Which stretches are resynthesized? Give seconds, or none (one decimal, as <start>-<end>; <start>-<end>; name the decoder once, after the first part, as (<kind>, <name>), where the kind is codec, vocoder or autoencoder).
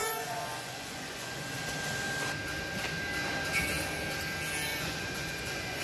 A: 0.0-1.6 (vocoder, Vocos); 4.7-5.8